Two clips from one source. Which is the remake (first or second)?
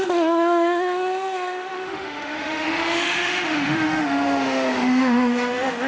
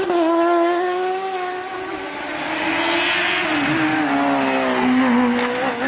first